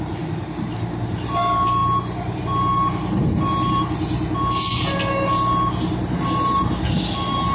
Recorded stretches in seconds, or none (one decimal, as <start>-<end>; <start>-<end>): 0.0-7.5